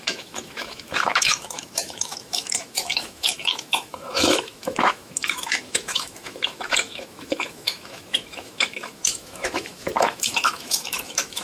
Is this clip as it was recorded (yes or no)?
no